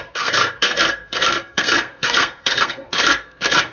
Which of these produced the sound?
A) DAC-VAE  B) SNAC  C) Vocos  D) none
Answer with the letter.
B